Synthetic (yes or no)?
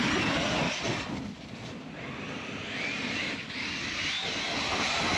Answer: no